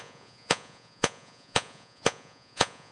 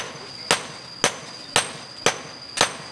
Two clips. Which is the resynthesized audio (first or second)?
first